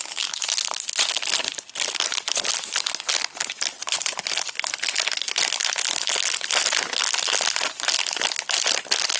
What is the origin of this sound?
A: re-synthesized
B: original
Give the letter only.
B